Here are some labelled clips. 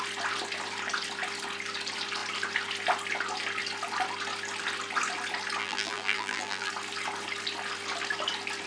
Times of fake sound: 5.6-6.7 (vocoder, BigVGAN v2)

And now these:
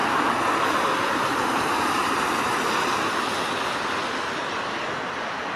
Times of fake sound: 0.6-2.0 (vocoder, BigVGAN v2)

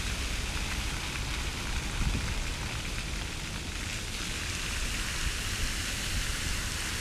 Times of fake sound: none

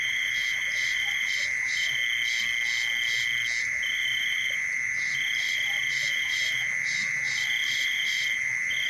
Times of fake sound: 0.0-2.0 (vocoder, BigVGAN v2); 3.6-8.9

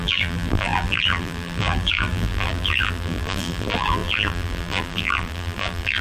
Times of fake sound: 0.0-6.0 (vocoder, BigVGAN v2)

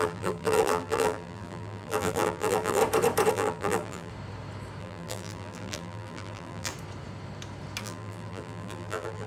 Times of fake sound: 0.0-2.8 (vocoder, BigVGAN v2); 3.3-4.1; 4.8-6.7; 7.8-9.3

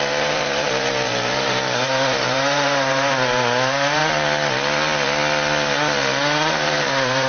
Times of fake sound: 0.0-4.0 (vocoder, BigVGAN v2); 6.5-7.3

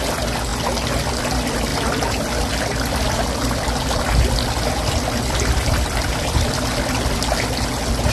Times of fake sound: 1.7-6.6 (vocoder, BigVGAN v2)